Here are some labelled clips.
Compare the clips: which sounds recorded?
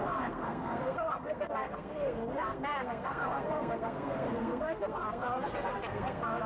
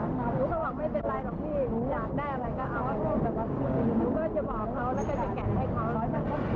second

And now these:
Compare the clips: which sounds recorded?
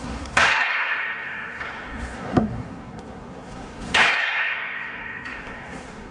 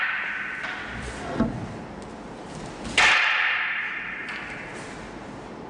second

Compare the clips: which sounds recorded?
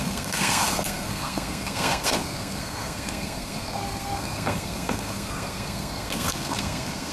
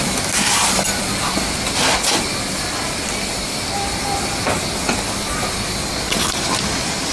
second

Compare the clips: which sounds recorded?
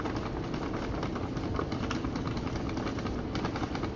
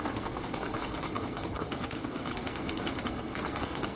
first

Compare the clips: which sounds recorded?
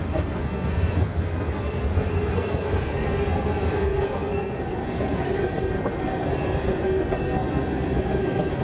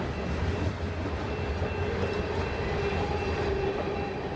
second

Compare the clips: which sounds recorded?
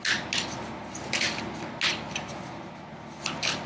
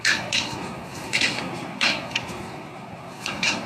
first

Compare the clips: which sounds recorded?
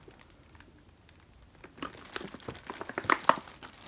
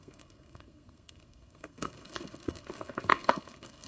first